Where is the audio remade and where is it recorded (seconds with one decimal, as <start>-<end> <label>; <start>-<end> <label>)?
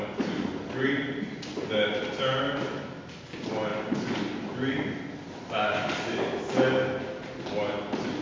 0.0-8.2 recorded